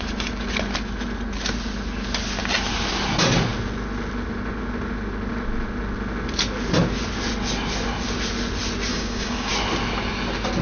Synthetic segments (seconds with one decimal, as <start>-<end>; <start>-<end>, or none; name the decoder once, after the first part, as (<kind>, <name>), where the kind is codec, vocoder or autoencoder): 8.9-9.5 (codec, DAC)